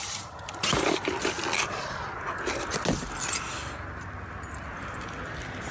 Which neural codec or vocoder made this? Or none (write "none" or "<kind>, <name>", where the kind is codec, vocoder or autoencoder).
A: none